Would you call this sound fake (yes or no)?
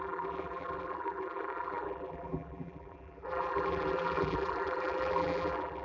yes